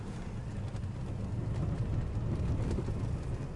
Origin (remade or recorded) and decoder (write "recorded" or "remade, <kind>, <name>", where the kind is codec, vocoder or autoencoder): recorded